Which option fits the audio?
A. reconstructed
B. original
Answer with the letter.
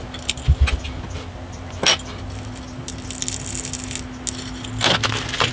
B